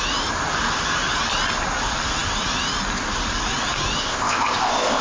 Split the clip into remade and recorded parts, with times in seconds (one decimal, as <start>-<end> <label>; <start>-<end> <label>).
0.0-4.0 recorded; 4.0-5.0 remade

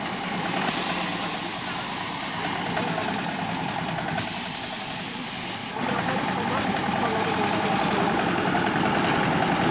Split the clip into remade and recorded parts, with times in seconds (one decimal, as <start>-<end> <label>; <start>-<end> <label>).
0.0-9.7 recorded